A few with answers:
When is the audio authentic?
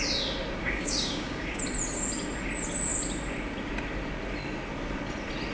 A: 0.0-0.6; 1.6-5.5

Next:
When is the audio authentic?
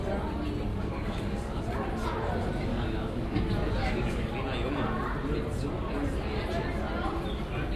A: 0.0-0.7; 1.6-2.7; 3.4-3.8; 4.3-7.8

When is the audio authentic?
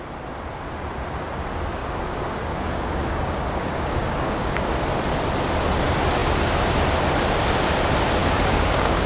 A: 0.0-1.8; 4.7-8.2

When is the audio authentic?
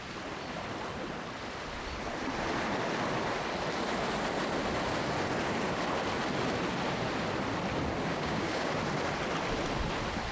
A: 0.0-8.1; 8.7-10.3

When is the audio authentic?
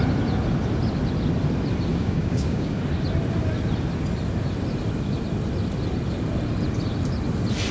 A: 0.0-1.9; 2.8-7.7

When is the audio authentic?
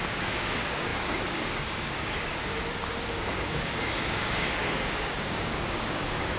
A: 2.5-3.1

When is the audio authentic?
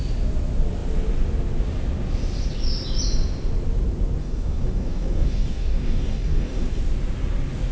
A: 0.0-4.2; 6.8-7.7